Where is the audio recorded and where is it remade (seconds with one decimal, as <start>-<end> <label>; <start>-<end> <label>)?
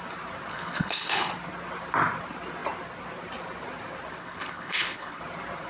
0.0-0.5 recorded; 0.5-1.3 remade; 1.3-4.2 recorded; 4.2-5.2 remade; 5.2-5.7 recorded